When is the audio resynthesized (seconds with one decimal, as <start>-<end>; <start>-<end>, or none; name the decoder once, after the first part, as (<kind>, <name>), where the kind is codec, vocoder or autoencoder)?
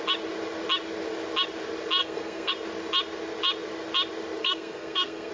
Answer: 2.0-2.5 (codec, SNAC); 4.4-5.3